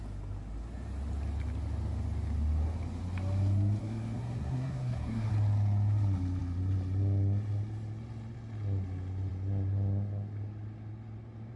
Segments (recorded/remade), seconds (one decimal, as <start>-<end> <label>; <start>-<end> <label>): 0.0-3.8 recorded; 3.8-5.3 remade; 5.3-11.6 recorded